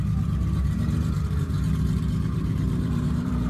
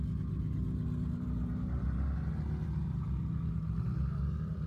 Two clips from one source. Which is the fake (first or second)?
first